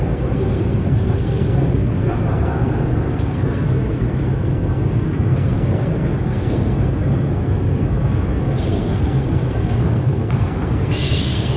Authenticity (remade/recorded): remade